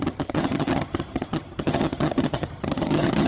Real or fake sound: fake